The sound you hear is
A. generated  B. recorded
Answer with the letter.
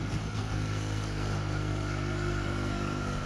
A